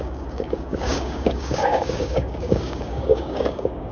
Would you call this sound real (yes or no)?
no